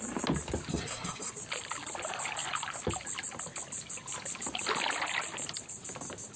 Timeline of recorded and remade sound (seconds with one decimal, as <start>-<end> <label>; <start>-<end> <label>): 0.0-0.7 recorded; 0.7-1.3 remade; 1.3-6.4 recorded